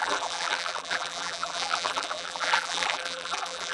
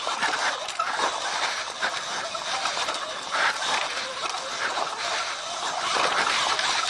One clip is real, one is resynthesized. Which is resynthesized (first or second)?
first